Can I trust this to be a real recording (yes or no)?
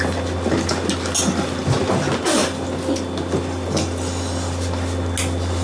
yes